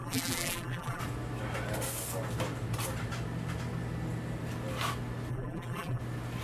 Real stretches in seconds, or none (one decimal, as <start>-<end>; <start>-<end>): 1.0-5.3; 6.0-6.4